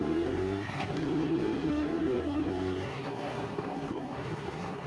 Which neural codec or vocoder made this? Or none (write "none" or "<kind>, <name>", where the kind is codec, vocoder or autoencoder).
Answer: codec, SNAC